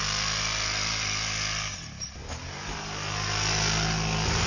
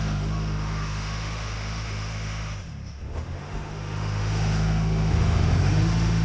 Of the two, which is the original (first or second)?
first